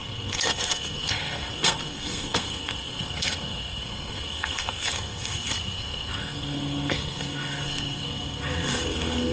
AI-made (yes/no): yes